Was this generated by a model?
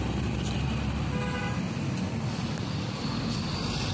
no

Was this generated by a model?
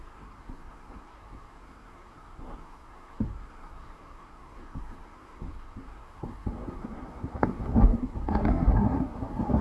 yes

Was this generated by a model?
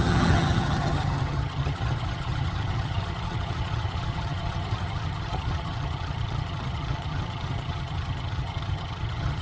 yes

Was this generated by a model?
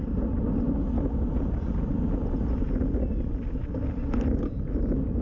no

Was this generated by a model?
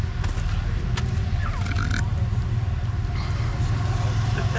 no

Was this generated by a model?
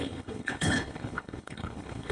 yes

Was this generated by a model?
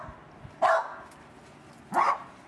no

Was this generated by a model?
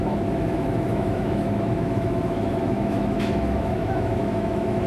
yes